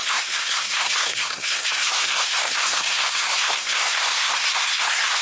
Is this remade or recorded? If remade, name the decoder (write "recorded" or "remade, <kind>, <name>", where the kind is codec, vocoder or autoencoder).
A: remade, codec, SNAC